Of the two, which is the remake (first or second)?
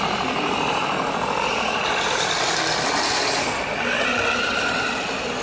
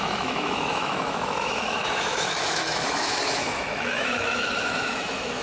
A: second